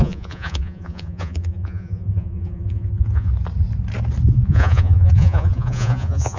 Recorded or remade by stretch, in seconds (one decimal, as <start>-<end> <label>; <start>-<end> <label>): 0.0-3.3 remade; 3.3-4.3 recorded; 4.3-6.4 remade